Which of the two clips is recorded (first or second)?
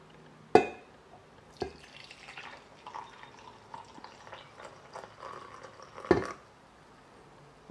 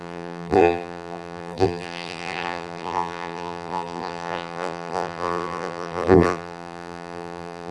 first